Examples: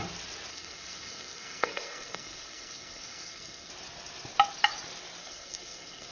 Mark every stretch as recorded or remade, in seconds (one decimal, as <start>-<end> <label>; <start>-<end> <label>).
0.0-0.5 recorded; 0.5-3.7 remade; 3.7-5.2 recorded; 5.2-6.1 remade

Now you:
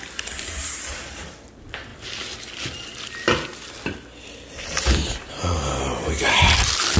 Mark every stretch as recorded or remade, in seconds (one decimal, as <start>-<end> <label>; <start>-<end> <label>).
0.0-7.0 recorded

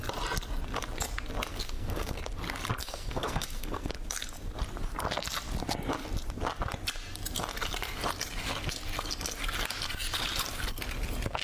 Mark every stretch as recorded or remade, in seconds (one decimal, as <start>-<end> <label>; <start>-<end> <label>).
0.0-1.5 recorded; 1.5-2.2 remade; 2.2-2.8 recorded; 2.8-3.9 remade; 3.9-11.4 recorded

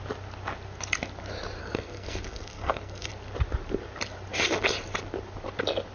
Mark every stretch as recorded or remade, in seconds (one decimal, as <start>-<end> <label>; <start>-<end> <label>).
0.0-1.6 recorded; 1.6-3.1 remade; 3.1-5.9 recorded